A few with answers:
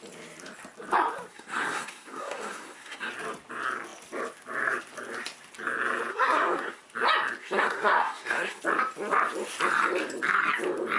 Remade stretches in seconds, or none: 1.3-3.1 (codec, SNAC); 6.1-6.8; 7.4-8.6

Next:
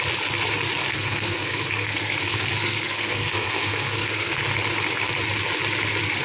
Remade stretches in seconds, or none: 0.9-4.4 (codec, SNAC)